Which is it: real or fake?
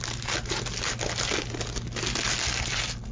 real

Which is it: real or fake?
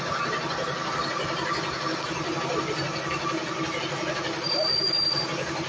real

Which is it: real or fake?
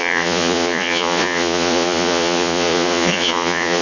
fake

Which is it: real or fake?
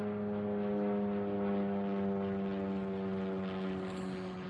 real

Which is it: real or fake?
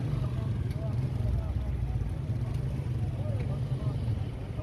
real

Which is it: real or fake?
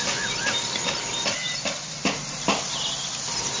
real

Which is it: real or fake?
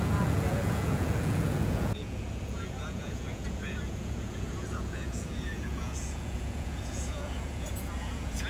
fake